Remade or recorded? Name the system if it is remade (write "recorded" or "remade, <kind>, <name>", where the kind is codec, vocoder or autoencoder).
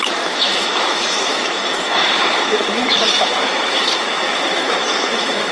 remade, autoencoder, DAC-VAE